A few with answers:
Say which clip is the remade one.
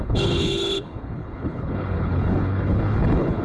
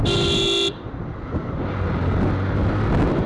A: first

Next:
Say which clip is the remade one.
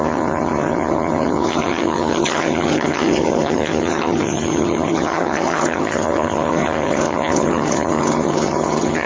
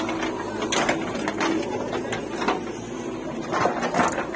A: first